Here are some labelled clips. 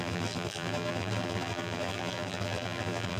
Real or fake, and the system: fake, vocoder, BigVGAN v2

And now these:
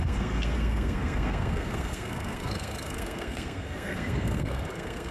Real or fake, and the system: fake, codec, SNAC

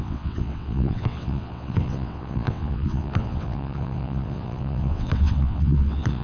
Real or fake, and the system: fake, vocoder, WaveNeXt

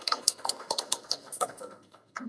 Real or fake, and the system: fake, codec, SNAC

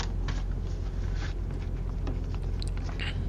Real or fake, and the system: real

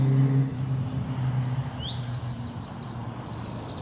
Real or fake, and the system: real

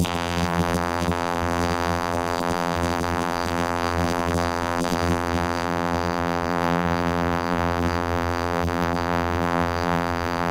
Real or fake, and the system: fake, vocoder, BigVGAN v2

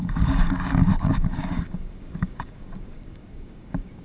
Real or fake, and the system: fake, codec, DAC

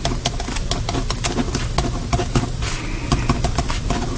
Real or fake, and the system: real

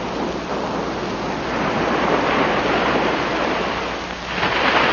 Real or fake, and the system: real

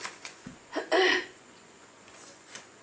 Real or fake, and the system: fake, vocoder, Vocos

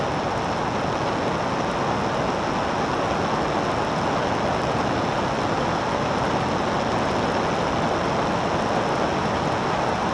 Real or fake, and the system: real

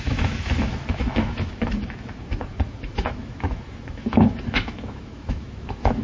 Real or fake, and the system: fake, autoencoder, DAC-VAE